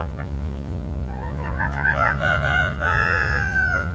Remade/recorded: remade